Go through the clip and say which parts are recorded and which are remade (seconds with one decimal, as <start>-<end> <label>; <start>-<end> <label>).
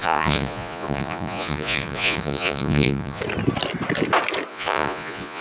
0.0-3.2 remade; 3.2-4.5 recorded; 4.5-5.4 remade